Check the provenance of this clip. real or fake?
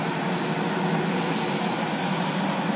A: real